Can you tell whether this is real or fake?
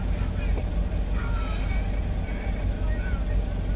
real